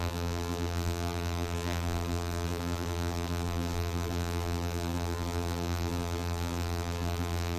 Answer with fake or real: fake